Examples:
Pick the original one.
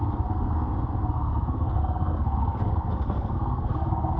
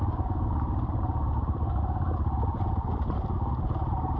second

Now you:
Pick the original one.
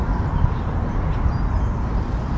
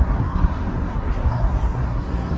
first